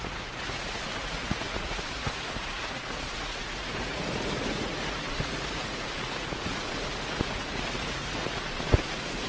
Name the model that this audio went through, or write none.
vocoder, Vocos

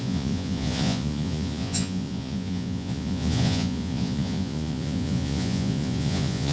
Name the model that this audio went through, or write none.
vocoder, Vocos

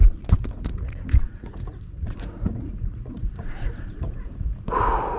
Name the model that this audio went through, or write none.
vocoder, Vocos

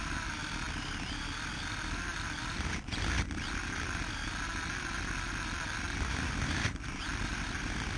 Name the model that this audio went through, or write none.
none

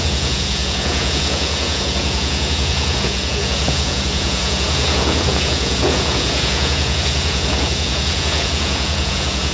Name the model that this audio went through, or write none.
vocoder, Vocos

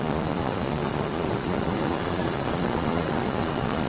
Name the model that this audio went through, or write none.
vocoder, Vocos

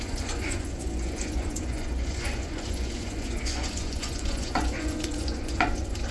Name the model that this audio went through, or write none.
vocoder, Vocos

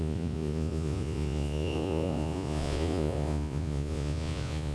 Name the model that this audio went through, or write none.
vocoder, Vocos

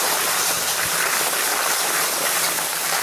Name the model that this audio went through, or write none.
none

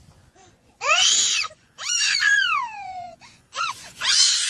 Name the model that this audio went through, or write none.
vocoder, Vocos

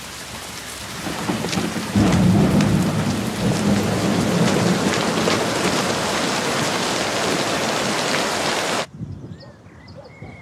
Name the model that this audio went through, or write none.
none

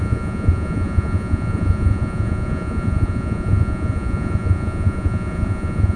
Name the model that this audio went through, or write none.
vocoder, Vocos